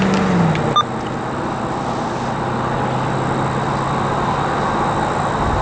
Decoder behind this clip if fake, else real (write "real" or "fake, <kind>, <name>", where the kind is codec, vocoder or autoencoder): real